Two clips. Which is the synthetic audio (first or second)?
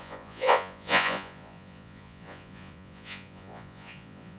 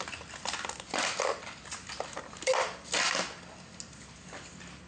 first